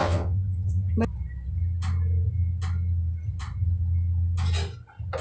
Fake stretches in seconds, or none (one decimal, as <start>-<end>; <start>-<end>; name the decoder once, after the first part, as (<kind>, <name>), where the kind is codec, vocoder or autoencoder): 0.0-0.9 (vocoder, WaveNeXt)